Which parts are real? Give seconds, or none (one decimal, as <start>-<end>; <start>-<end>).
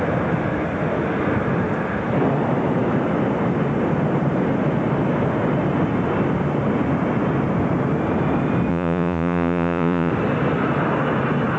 0.0-8.7; 10.1-11.6